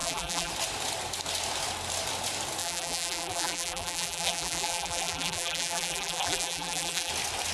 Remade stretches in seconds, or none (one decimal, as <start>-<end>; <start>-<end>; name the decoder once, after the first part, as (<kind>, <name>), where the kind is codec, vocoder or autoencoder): 0.0-0.5 (vocoder, BigVGAN v2); 2.6-7.1